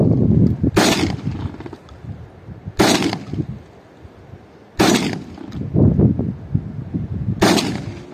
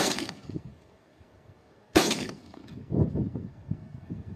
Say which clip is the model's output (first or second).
second